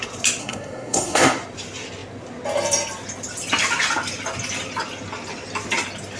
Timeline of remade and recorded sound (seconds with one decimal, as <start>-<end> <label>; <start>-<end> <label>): 0.0-0.4 recorded; 0.4-1.2 remade; 1.2-6.2 recorded